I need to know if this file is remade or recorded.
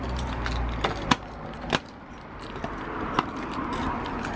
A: recorded